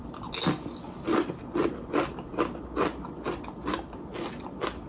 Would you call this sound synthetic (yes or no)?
no